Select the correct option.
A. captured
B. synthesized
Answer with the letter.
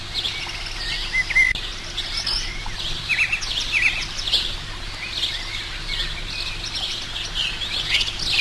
A